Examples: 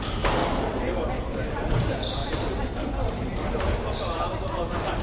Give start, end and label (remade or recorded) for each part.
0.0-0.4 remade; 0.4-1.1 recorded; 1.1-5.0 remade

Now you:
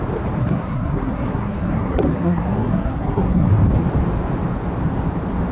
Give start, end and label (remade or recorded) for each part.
0.0-0.4 recorded; 0.4-3.5 remade; 3.5-5.5 recorded

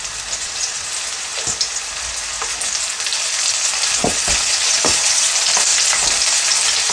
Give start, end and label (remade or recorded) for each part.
0.0-0.4 recorded; 0.4-0.9 remade; 0.9-4.0 recorded; 4.0-5.3 remade; 5.3-6.9 recorded

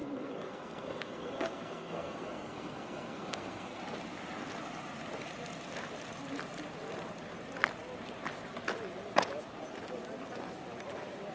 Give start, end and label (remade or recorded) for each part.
0.0-3.8 remade; 3.8-11.3 recorded

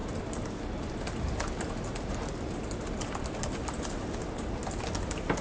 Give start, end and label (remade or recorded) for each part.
0.0-5.4 recorded

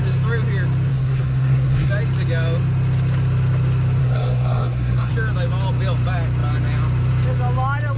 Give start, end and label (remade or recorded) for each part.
0.0-0.9 recorded; 0.9-1.9 remade; 1.9-4.0 recorded; 4.0-5.1 remade; 5.1-8.0 recorded

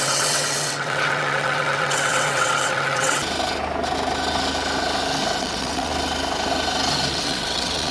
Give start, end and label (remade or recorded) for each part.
0.0-3.2 remade; 3.2-5.4 recorded; 5.4-5.9 remade; 5.9-7.1 recorded; 7.1-7.9 remade

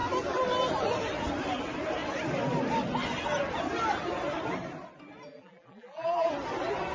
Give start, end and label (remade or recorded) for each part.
0.0-5.3 recorded; 5.3-6.3 remade; 6.3-6.9 recorded